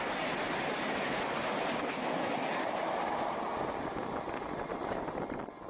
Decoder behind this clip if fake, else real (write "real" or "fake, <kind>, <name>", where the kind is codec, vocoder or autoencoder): real